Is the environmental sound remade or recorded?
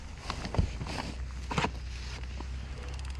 recorded